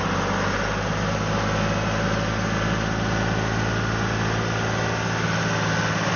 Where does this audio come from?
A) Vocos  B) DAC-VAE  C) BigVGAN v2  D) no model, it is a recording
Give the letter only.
D